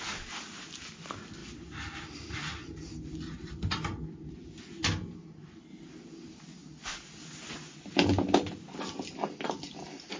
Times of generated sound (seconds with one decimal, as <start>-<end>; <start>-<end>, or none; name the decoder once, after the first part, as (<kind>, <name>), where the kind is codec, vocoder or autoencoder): none